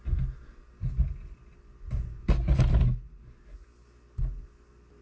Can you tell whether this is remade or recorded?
recorded